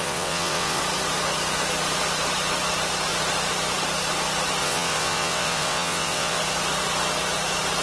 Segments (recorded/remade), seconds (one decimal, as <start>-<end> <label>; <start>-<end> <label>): 0.0-0.8 remade; 0.8-4.6 recorded; 4.6-6.4 remade; 6.4-7.8 recorded